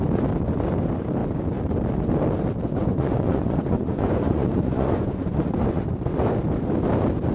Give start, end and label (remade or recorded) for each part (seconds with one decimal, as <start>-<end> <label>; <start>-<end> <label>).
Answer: 0.0-2.8 recorded; 2.8-5.8 remade; 5.8-7.3 recorded